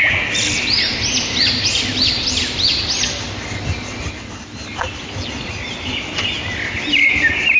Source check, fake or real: real